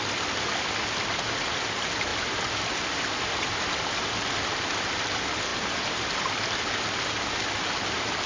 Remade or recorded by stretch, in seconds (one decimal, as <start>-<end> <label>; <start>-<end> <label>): 0.0-8.3 recorded